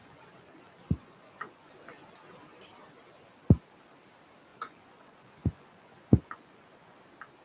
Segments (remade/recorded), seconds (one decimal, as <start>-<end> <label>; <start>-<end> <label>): 0.0-1.7 remade; 1.7-4.5 recorded; 4.5-7.0 remade; 7.0-7.4 recorded